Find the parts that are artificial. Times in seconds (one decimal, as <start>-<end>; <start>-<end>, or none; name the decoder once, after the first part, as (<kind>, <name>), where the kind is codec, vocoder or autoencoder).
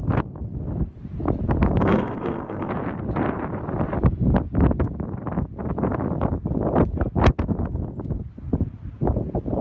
1.8-2.7 (codec, SNAC)